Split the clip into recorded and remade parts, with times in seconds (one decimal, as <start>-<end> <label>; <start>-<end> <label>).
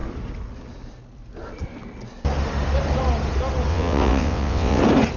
0.0-3.7 recorded; 3.7-4.8 remade; 4.8-5.2 recorded